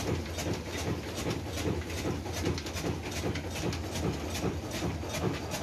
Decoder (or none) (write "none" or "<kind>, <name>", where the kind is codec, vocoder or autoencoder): none